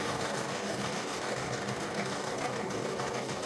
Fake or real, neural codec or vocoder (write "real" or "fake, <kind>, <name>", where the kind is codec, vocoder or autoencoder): fake, codec, DAC